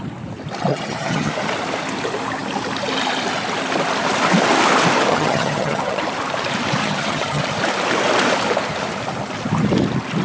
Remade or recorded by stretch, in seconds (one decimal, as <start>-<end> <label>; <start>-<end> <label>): 0.0-0.7 recorded; 0.7-1.3 remade; 1.3-5.1 recorded; 5.1-6.0 remade; 6.0-6.8 recorded; 6.8-7.4 remade; 7.4-10.2 recorded